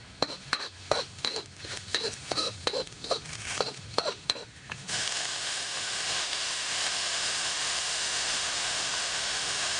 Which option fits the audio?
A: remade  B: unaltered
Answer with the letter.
A